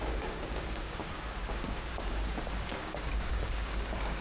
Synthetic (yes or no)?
yes